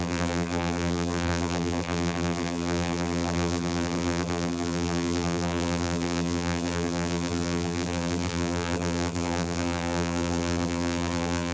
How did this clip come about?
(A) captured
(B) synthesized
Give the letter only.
B